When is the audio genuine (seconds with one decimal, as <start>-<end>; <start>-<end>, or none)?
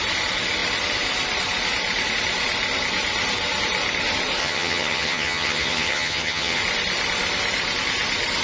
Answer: 0.0-4.4; 6.6-8.4